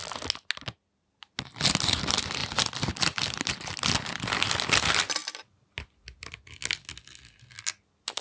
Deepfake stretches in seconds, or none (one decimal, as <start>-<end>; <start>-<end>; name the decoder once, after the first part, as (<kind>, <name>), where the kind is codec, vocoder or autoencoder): 2.4-3.5 (vocoder, BigVGAN v2)